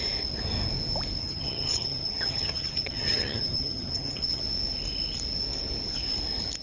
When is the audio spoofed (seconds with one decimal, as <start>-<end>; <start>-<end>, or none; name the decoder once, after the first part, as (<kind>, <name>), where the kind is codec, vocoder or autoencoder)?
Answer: 1.2-4.4 (vocoder, HiFi-GAN)